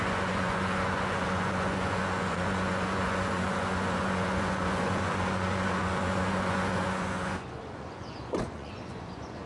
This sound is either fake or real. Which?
fake